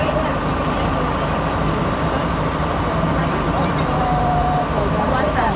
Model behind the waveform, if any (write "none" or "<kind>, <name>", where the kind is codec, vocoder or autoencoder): vocoder, BigVGAN v2